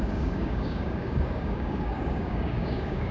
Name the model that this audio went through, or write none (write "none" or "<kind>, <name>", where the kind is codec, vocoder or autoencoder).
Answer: codec, DAC